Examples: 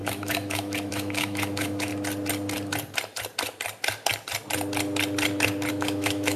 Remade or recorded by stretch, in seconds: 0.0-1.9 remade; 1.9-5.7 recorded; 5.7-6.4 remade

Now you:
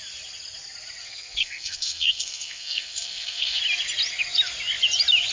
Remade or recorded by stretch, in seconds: 0.0-1.0 recorded; 1.0-3.6 remade; 3.6-5.3 recorded

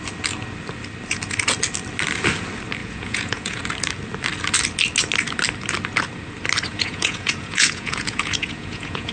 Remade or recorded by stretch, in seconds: 0.0-2.8 recorded; 2.8-3.6 remade; 3.6-6.7 recorded; 6.7-9.1 remade

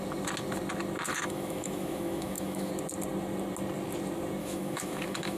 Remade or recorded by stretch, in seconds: 0.0-1.1 recorded; 1.1-2.7 remade; 2.7-4.4 recorded; 4.4-5.4 remade

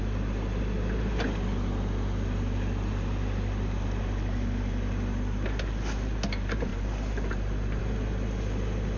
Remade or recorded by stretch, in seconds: 0.0-9.0 recorded

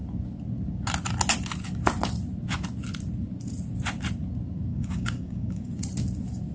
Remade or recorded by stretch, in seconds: 0.0-4.7 recorded; 4.7-5.7 remade; 5.7-6.5 recorded

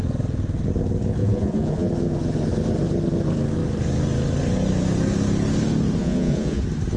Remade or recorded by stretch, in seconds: 0.0-1.2 recorded; 1.2-1.9 remade; 1.9-6.0 recorded; 6.0-6.6 remade; 6.6-7.0 recorded